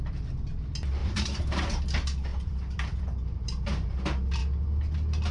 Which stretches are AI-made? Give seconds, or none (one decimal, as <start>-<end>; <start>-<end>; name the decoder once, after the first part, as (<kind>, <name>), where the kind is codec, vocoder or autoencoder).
1.0-1.8 (vocoder, BigVGAN v2); 2.3-3.9